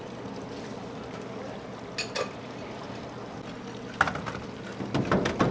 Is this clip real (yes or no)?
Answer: yes